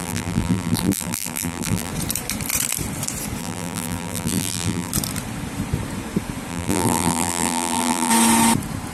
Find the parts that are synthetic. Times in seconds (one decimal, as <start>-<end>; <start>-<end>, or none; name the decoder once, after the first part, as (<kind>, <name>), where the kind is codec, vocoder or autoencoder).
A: 0.0-1.9 (vocoder, BigVGAN v2); 3.4-4.9; 6.5-8.1